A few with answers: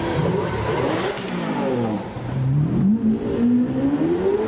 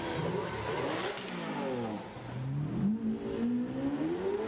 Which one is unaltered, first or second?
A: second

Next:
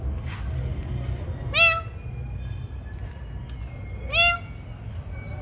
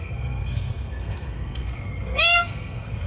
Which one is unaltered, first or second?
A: first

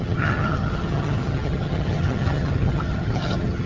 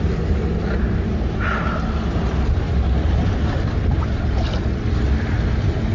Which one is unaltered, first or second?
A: second